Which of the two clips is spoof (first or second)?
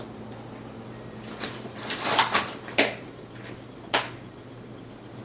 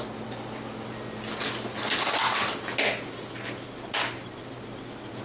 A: first